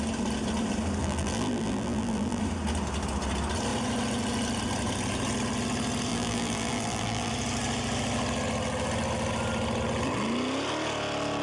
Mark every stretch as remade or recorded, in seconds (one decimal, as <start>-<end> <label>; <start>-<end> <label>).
0.0-1.0 recorded; 1.0-2.4 remade; 2.4-6.1 recorded; 6.1-7.3 remade; 7.3-11.4 recorded